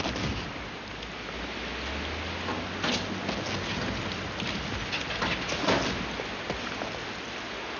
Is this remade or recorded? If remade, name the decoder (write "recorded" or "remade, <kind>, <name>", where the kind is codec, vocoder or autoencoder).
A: recorded